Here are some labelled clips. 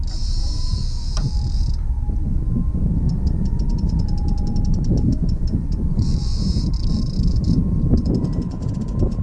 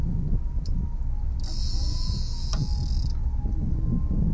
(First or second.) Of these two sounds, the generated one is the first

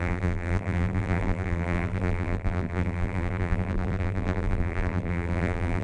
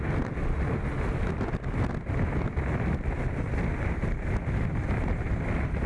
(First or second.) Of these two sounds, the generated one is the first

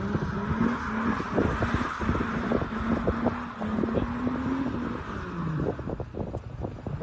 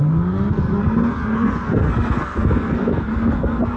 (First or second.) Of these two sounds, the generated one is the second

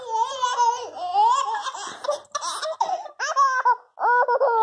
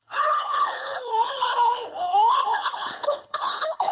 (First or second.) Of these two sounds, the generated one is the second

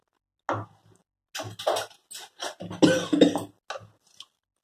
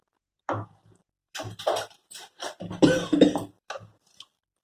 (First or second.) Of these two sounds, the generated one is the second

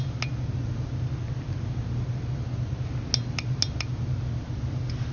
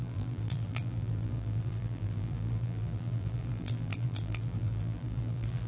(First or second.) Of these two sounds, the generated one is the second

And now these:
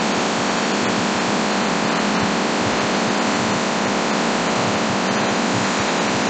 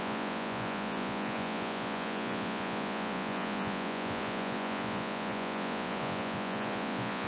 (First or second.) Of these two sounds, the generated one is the second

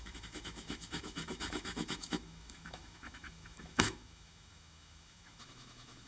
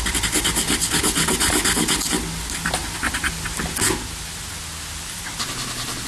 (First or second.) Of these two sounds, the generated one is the first